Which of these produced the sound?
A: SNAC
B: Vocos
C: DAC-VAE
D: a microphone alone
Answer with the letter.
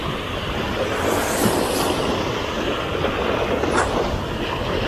D